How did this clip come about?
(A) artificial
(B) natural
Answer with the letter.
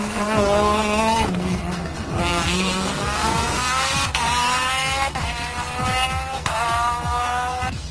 A